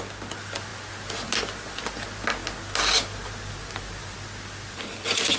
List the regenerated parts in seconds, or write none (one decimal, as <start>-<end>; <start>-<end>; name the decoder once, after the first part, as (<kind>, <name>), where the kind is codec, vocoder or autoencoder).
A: none